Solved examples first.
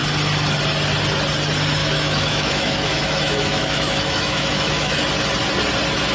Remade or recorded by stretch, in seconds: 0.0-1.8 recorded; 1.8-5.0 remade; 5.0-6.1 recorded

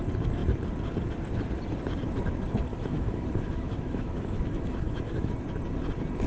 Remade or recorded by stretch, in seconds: 0.0-2.7 recorded; 2.7-5.3 remade; 5.3-6.3 recorded

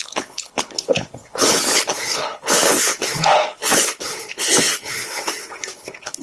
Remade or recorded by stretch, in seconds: 0.0-6.2 remade

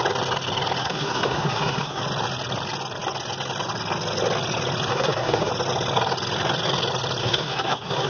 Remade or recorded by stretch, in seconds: 0.0-0.8 recorded; 0.8-2.0 remade; 2.0-4.9 recorded; 4.9-5.5 remade; 5.5-7.2 recorded; 7.2-8.1 remade

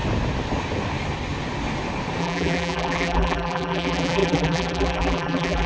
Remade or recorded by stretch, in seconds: 0.0-2.2 recorded; 2.2-5.7 remade

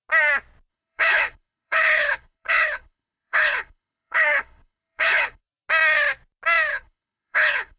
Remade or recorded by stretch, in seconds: 0.0-0.7 recorded; 0.7-5.4 remade; 5.4-6.7 recorded; 6.7-7.8 remade

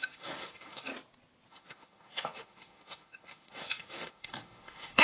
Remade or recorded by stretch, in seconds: 0.0-0.9 remade; 0.9-1.5 recorded; 1.5-5.0 remade